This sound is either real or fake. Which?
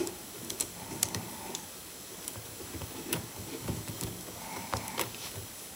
fake